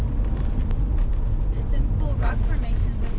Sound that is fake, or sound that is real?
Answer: real